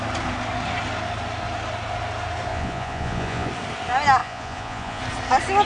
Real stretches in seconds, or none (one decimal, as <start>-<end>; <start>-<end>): 0.0-2.5; 3.5-4.2; 5.0-5.6